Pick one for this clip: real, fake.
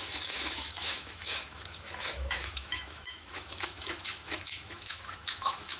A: fake